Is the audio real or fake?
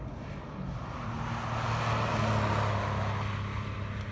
real